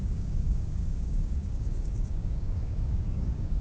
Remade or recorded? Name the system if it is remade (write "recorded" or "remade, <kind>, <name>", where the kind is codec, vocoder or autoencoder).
remade, codec, DAC